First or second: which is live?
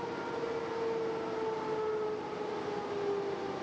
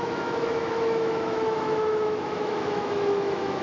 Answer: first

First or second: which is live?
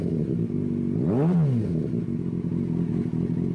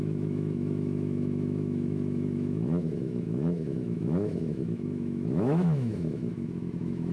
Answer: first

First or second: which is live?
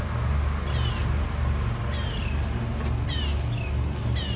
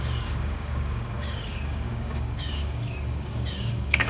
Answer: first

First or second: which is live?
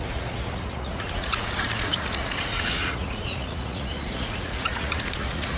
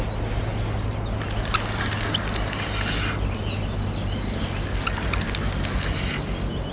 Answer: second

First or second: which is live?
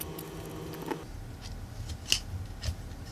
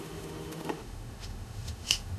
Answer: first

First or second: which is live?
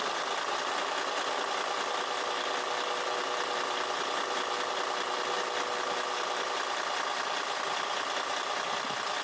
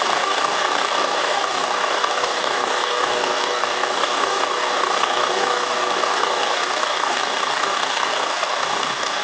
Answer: first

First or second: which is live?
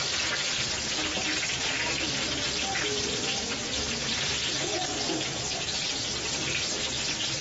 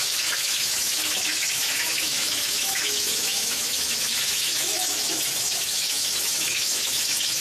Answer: first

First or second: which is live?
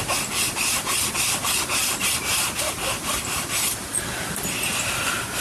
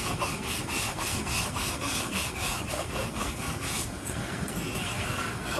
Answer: first